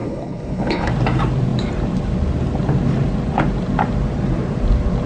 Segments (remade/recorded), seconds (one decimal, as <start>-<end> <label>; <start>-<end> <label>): 0.0-0.9 remade; 0.9-5.1 recorded

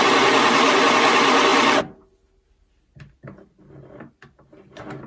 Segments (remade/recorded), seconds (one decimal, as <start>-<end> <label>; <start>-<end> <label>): 0.0-5.1 recorded